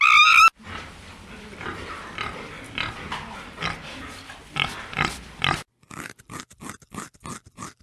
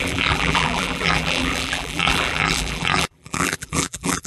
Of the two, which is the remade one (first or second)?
second